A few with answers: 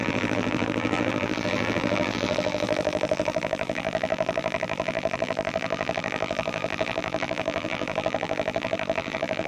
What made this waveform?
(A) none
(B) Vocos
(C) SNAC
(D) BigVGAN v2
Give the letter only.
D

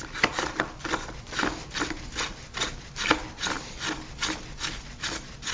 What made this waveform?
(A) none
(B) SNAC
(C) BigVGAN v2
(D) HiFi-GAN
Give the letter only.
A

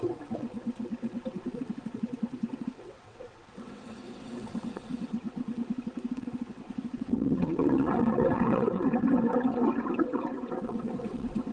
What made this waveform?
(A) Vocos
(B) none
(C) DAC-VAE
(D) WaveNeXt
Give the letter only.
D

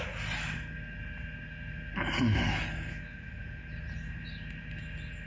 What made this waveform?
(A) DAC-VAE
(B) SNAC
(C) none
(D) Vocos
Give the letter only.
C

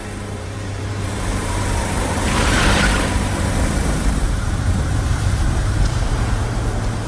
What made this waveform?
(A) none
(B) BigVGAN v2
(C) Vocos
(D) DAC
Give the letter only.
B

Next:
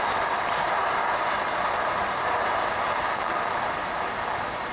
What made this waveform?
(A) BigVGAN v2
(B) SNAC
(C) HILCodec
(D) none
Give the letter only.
D